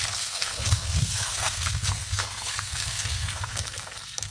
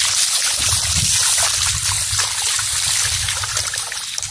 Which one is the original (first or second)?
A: second